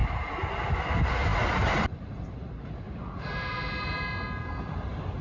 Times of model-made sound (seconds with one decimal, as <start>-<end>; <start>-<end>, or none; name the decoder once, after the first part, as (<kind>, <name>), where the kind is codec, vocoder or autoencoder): none